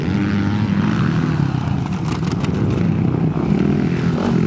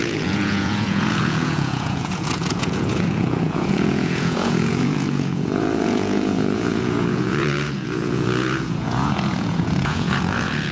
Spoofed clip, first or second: second